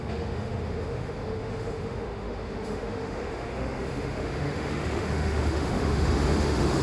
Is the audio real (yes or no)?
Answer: no